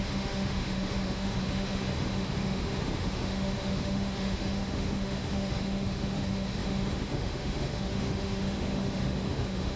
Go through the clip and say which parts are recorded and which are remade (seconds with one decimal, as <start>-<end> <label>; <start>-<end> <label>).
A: 0.0-9.8 remade